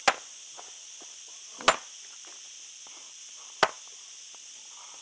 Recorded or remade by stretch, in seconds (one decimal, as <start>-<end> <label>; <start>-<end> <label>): 0.0-5.0 recorded